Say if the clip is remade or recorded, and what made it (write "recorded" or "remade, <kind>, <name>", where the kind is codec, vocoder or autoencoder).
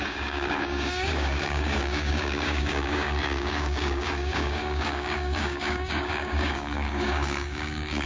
remade, codec, DAC